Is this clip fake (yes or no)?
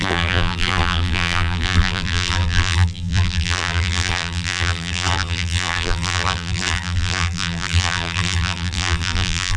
yes